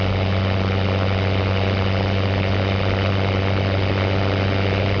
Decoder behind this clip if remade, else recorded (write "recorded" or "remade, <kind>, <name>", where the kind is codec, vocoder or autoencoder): recorded